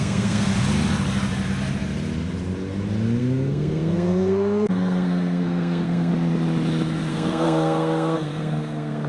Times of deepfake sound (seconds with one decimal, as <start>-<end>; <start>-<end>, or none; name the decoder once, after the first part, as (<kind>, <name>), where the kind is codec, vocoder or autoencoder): 0.0-0.5 (codec, SNAC); 3.2-6.1; 7.1-9.1